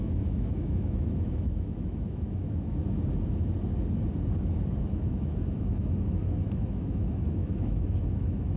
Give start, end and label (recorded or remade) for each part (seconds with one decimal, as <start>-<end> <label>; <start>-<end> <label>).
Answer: 0.0-2.8 remade; 2.8-4.8 recorded; 4.8-8.6 remade